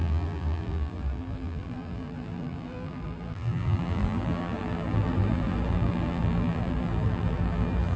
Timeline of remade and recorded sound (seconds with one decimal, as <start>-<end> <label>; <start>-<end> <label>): 0.0-8.0 remade